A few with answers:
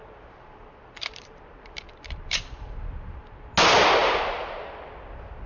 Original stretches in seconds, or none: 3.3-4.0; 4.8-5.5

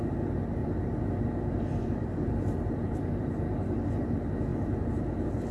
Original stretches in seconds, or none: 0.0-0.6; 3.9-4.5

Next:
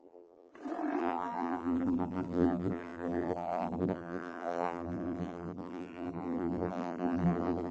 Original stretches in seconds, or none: 0.5-1.0